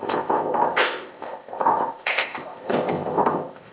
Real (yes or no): no